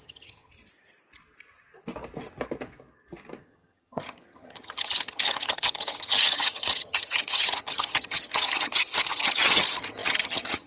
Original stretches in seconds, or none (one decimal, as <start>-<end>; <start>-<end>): 0.5-3.4